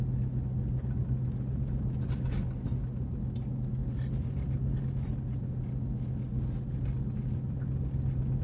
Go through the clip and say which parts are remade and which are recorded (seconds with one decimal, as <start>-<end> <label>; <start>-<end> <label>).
0.0-8.4 recorded